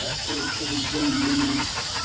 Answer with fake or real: fake